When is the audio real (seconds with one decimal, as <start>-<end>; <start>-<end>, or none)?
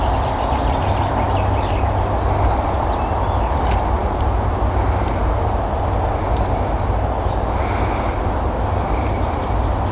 0.0-9.9